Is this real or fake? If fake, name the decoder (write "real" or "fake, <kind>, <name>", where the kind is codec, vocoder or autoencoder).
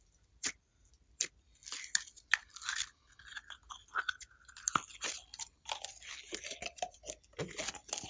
real